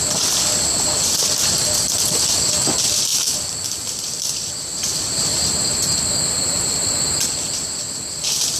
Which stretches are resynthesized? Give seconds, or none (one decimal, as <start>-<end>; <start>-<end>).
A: 3.1-4.9

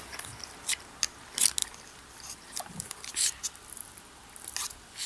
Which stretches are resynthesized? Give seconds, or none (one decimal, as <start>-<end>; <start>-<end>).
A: 1.6-3.4

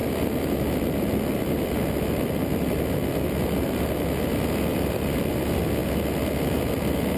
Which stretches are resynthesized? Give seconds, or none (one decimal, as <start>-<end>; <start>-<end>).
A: 0.0-4.3; 4.7-5.3

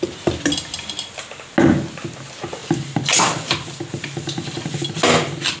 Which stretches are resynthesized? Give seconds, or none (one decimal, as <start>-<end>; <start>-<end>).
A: 2.6-5.6

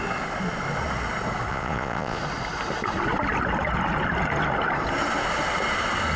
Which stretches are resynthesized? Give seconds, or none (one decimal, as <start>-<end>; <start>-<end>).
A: 1.5-2.2

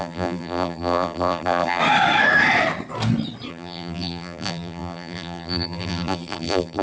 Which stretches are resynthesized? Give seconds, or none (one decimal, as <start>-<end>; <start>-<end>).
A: 0.0-1.8; 3.5-6.8